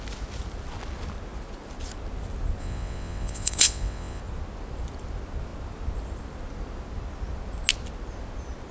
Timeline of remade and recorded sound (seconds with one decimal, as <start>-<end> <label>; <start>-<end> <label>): 0.0-2.6 recorded; 2.6-4.2 remade; 4.2-8.7 recorded

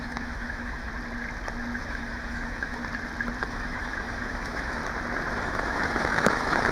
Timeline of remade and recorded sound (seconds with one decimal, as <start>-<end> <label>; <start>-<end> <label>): 0.0-0.9 remade; 0.9-1.8 recorded; 1.8-2.8 remade; 2.8-3.4 recorded; 3.4-4.8 remade; 4.8-5.4 recorded; 5.4-6.7 remade

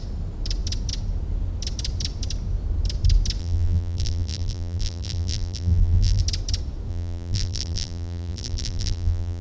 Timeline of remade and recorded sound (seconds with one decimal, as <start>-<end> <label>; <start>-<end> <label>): 0.0-3.4 recorded; 3.4-6.2 remade; 6.2-6.9 recorded; 6.9-9.4 remade